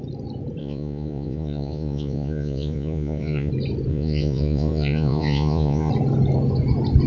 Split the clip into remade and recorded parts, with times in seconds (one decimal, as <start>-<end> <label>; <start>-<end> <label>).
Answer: 0.0-0.6 recorded; 0.6-3.5 remade; 3.5-3.9 recorded; 3.9-5.9 remade; 5.9-7.1 recorded